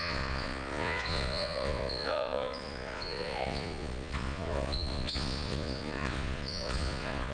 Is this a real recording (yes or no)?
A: no